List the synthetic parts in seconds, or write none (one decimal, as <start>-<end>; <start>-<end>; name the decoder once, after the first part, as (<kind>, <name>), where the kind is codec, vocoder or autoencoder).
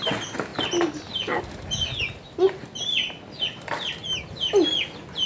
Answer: none